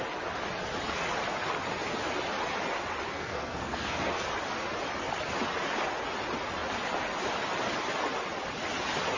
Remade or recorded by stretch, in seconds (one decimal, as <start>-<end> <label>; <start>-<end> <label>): 0.0-3.1 recorded; 3.1-4.1 remade; 4.1-9.2 recorded